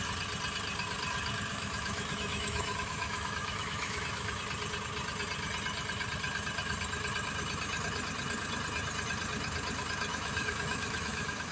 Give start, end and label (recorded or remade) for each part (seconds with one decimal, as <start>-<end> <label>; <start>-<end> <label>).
0.0-1.5 recorded; 1.5-4.4 remade; 4.4-10.1 recorded; 10.1-11.5 remade